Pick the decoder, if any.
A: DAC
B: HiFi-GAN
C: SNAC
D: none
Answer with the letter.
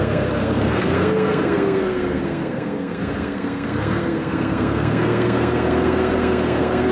C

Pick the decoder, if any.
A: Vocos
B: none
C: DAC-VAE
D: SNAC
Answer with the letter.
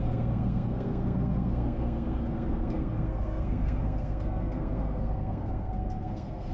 D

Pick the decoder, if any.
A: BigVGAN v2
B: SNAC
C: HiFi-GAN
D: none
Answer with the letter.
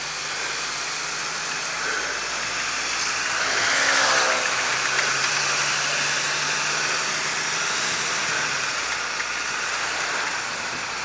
D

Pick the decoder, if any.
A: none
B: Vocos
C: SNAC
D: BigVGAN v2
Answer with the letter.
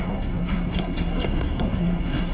C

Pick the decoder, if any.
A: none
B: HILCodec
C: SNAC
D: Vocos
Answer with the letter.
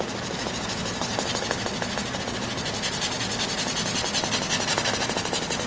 A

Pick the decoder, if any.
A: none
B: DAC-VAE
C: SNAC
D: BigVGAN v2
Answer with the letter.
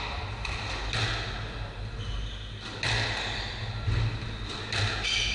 A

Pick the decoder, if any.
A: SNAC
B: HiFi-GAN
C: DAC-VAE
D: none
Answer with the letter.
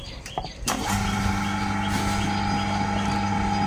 D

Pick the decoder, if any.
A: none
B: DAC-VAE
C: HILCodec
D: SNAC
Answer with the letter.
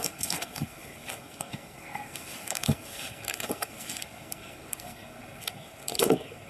D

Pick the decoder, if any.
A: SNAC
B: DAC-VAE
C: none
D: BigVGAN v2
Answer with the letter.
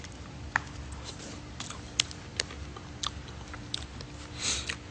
C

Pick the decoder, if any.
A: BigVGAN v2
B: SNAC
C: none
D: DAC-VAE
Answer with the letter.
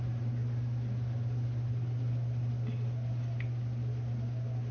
C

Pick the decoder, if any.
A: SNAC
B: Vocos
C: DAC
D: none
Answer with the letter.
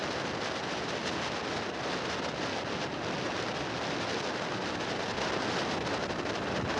D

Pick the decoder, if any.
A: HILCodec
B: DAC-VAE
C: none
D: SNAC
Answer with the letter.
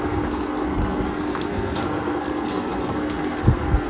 D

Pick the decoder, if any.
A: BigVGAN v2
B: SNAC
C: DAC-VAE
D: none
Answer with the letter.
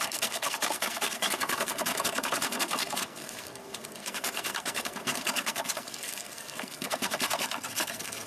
B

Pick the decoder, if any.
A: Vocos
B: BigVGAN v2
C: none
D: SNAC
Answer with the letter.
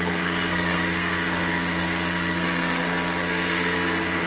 D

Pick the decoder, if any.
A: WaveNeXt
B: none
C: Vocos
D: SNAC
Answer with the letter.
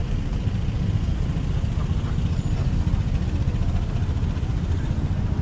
B